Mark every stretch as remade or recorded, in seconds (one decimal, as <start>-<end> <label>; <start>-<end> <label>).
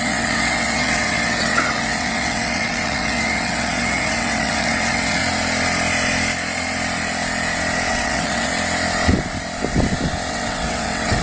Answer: 0.0-5.2 remade; 5.2-7.9 recorded; 7.9-8.5 remade; 8.5-10.3 recorded; 10.3-11.2 remade